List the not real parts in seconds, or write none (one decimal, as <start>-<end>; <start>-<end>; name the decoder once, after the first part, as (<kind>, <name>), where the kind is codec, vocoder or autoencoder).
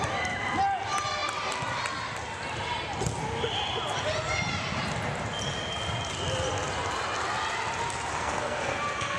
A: 8.1-9.2 (codec, SNAC)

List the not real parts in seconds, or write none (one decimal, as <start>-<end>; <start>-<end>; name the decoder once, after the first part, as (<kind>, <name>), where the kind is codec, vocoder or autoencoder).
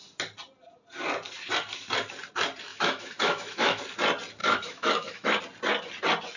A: 2.7-3.8 (autoencoder, DAC-VAE); 4.4-5.4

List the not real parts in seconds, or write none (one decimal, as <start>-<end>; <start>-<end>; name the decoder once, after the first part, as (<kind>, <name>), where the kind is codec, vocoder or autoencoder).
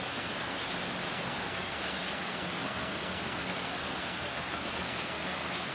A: 0.0-0.6 (codec, SNAC); 1.1-5.7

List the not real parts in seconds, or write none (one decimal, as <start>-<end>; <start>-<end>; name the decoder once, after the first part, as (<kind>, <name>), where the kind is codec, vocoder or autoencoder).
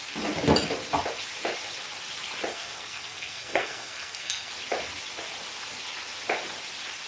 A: 2.5-4.5 (codec, SNAC)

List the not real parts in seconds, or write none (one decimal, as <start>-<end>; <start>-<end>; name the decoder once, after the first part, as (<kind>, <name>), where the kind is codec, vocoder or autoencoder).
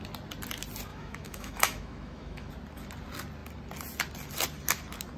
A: 0.9-2.5 (autoencoder, DAC-VAE)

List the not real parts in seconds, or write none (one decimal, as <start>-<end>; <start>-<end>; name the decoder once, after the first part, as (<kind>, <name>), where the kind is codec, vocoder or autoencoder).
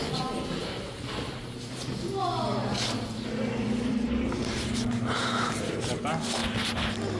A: 0.6-1.7 (vocoder, BigVGAN v2); 3.6-4.6; 5.0-5.9